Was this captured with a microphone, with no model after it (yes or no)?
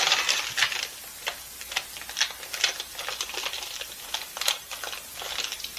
yes